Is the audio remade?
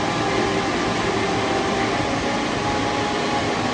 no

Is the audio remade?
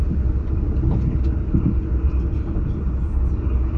no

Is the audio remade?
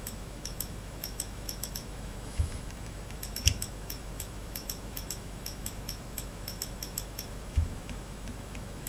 yes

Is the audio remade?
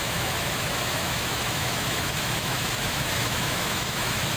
yes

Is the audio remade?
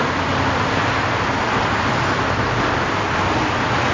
no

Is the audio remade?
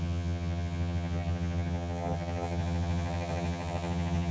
yes